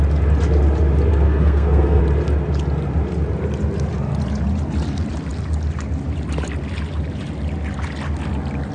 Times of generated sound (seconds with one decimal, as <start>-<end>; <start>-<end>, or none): 1.1-2.0